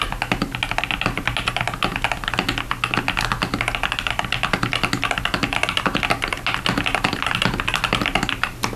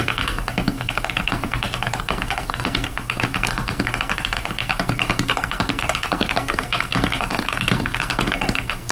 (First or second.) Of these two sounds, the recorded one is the first